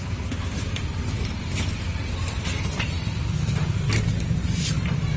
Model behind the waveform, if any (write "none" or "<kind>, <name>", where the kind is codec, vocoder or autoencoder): none